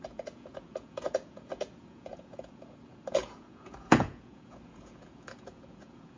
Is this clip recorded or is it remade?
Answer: remade